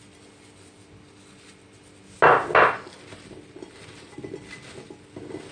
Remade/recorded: recorded